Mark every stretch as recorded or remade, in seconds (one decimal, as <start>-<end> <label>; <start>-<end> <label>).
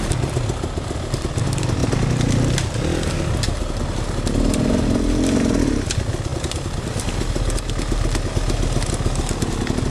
0.0-9.9 recorded